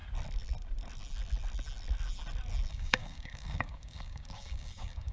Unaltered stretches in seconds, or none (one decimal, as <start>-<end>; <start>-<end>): 0.0-2.7